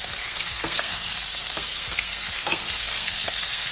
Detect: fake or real fake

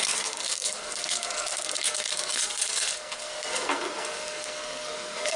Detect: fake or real fake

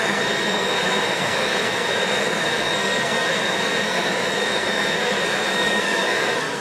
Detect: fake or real fake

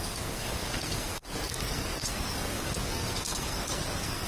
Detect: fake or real fake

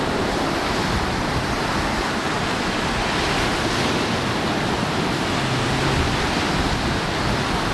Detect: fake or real real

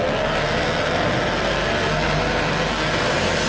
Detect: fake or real real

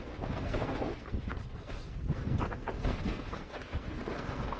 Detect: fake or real fake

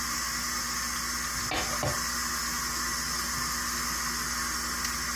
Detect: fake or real real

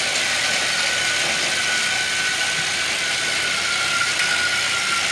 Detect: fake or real real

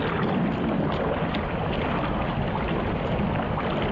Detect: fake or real real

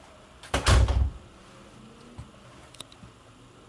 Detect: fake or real real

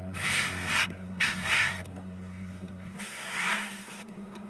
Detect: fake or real fake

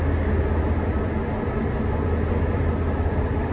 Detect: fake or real real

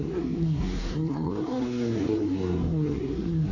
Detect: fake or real fake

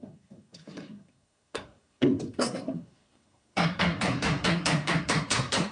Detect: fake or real fake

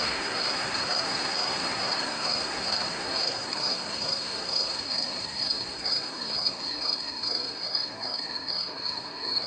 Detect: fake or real fake